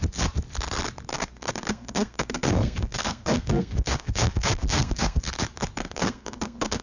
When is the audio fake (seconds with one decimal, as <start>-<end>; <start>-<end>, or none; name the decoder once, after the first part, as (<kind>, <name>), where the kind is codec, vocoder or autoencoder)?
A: 1.1-5.2 (codec, SNAC); 5.8-6.8